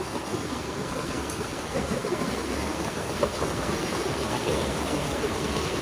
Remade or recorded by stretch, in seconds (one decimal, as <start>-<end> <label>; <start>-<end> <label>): 0.0-5.8 remade